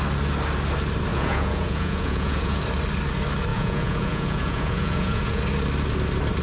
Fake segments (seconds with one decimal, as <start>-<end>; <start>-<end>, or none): 1.1-2.6; 3.5-5.4